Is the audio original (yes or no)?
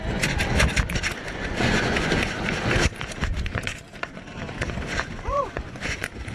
no